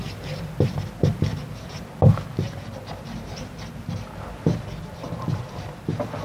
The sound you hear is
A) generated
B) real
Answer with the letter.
B